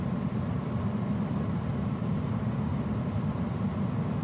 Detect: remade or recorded recorded